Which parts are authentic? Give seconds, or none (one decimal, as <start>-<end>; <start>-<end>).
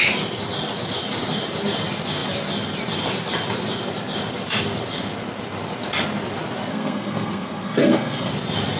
0.0-6.7; 8.3-8.8